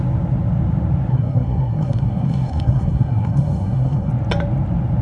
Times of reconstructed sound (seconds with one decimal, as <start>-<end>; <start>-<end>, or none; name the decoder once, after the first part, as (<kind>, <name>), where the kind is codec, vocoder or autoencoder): 1.1-4.1 (codec, SNAC)